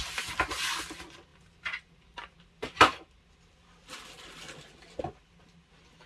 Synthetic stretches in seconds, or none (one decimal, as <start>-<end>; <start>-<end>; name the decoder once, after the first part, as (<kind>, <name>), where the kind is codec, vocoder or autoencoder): none